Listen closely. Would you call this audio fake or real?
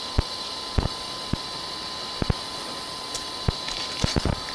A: real